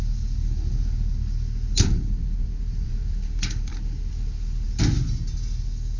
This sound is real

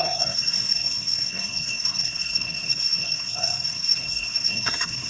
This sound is fake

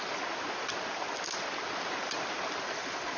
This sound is real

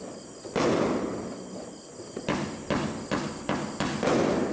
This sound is real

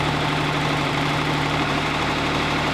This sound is fake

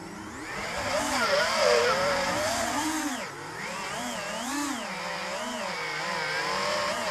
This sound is real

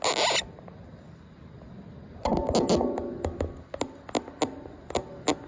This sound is real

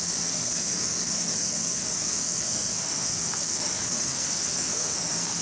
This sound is fake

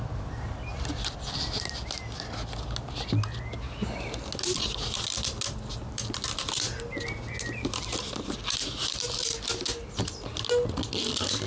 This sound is real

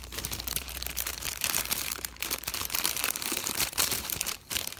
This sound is fake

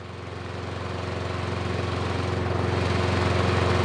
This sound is real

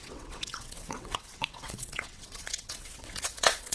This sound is fake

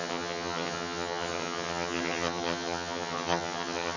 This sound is fake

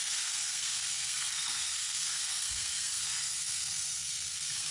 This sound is fake